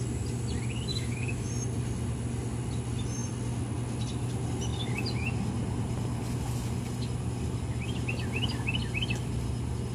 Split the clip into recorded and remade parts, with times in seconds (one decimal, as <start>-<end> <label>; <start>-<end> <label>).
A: 0.0-0.9 recorded; 0.9-1.5 remade; 1.5-9.9 recorded